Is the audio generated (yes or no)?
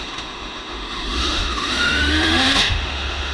yes